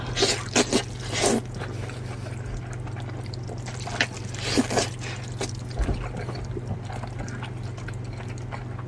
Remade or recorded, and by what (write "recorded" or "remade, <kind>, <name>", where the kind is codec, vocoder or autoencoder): recorded